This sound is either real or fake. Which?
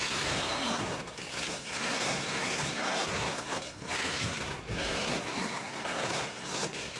fake